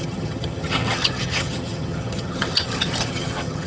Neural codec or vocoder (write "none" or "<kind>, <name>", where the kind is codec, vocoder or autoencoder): vocoder, HiFi-GAN